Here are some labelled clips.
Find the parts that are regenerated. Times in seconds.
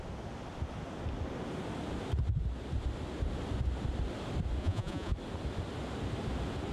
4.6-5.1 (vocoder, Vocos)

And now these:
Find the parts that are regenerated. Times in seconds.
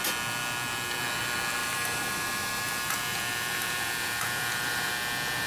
1.6-4.9 (vocoder, BigVGAN v2)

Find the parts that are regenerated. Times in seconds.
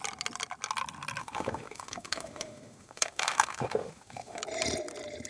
1.2-4.4 (autoencoder, DAC-VAE)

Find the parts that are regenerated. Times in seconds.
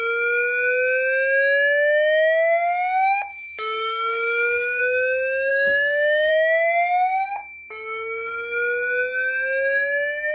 3.3-4.8 (codec, DAC); 5.5-6.3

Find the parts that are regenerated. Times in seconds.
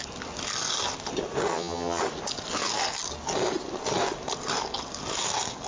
1.5-2.0 (vocoder, HiFi-GAN)